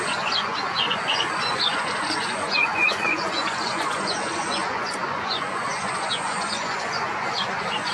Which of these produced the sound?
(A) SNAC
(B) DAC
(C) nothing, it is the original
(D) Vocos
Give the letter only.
D